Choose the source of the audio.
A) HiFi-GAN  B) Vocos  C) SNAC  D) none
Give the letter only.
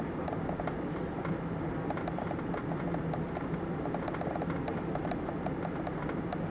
D